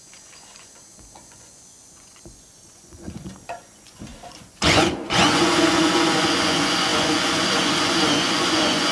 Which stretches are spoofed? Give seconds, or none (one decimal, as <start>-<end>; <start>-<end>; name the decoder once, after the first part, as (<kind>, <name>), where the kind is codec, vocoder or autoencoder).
0.0-8.9 (vocoder, Vocos)